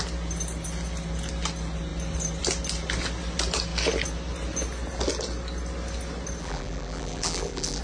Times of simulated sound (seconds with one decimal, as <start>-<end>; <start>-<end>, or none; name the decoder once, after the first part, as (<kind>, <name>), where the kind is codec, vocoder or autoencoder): 6.4-7.8 (vocoder, BigVGAN v2)